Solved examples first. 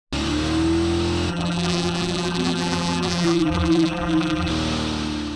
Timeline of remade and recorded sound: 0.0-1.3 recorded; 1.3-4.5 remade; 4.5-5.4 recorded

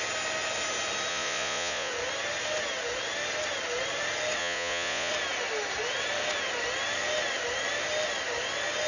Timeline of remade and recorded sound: 0.0-1.1 recorded; 1.1-1.9 remade; 1.9-4.4 recorded; 4.4-5.1 remade; 5.1-8.9 recorded

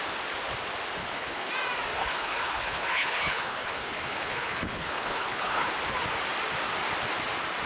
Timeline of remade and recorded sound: 0.0-1.0 recorded; 1.0-1.5 remade; 1.5-2.0 recorded; 2.0-5.7 remade; 5.7-7.7 recorded

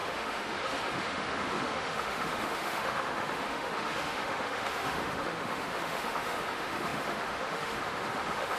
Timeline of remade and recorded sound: 0.0-8.6 remade

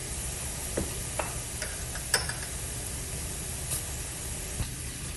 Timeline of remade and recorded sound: 0.0-5.2 recorded